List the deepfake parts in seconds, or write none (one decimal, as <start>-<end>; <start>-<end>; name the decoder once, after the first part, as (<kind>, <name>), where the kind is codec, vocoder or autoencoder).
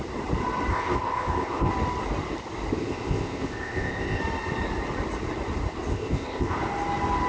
0.7-1.7 (codec, ZipCodec); 2.8-4.2; 5.9-6.6